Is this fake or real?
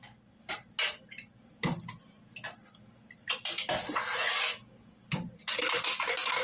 real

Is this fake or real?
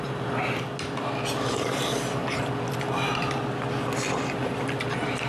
real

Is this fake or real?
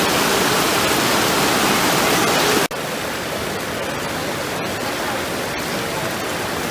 real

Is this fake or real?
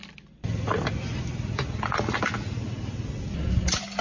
real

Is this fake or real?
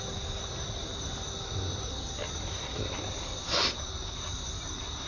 real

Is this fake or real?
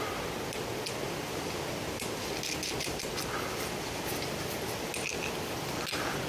real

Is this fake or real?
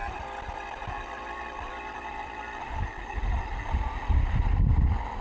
real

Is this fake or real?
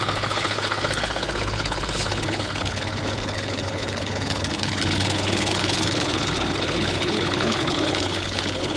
fake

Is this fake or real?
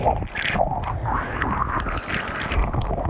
real